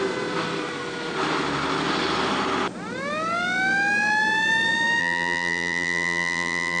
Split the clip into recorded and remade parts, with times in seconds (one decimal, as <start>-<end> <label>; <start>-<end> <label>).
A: 0.0-5.0 recorded; 5.0-6.8 remade